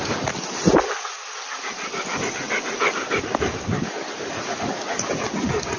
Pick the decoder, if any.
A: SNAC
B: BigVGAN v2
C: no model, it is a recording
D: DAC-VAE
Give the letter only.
C